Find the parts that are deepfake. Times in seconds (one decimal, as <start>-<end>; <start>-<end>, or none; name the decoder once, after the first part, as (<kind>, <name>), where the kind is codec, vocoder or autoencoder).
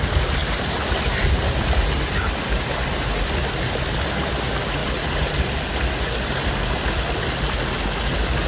none